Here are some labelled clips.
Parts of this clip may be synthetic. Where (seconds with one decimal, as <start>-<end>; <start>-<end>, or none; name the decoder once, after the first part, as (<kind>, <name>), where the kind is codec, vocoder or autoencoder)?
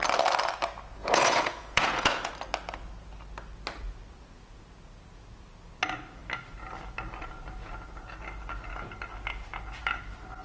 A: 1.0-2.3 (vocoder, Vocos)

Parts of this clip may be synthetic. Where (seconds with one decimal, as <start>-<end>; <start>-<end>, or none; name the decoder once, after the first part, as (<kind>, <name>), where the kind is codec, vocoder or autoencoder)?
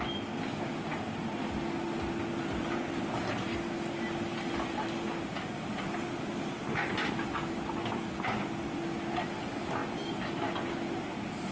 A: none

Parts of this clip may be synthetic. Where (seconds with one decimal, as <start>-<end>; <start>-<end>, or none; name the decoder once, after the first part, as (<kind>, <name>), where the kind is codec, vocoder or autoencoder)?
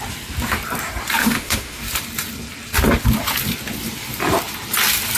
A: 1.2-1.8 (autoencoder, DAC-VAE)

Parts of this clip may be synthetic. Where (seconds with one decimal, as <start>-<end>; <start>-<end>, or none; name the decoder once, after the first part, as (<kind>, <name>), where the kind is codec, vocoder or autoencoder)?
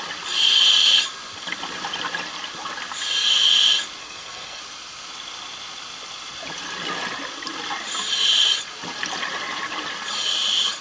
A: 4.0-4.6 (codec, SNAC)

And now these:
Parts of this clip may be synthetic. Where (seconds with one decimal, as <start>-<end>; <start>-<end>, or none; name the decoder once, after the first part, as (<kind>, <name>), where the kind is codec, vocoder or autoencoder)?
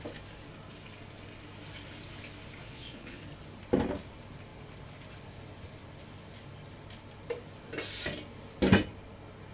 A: 2.6-3.2 (vocoder, Vocos)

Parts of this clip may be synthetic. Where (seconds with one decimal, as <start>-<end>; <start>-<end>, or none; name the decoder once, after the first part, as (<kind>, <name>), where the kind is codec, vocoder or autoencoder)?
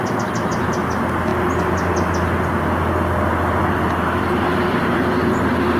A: none